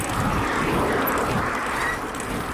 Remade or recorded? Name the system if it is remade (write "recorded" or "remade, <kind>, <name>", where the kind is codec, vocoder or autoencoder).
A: recorded